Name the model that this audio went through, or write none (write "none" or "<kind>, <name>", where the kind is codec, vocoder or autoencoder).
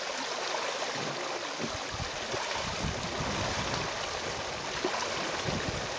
none